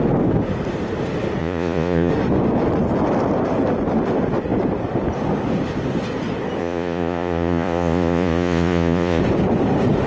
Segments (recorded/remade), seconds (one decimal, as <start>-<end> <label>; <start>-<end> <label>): 0.0-1.4 recorded; 1.4-2.1 remade; 2.1-6.6 recorded; 6.6-9.2 remade; 9.2-10.1 recorded